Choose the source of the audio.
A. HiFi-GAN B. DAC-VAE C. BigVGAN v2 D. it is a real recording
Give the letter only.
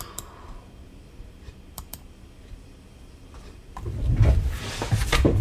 C